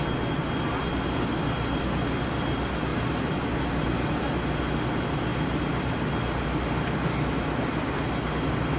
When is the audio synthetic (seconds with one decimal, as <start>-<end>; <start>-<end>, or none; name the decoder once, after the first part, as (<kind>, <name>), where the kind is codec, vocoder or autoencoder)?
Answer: none